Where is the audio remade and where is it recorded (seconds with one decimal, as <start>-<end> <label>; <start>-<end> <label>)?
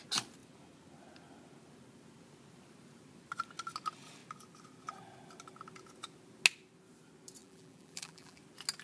0.0-7.4 recorded; 7.4-8.4 remade; 8.4-8.8 recorded